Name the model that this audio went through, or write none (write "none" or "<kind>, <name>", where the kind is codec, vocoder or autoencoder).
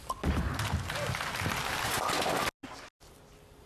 none